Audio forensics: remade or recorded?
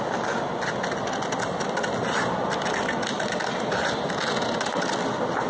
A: recorded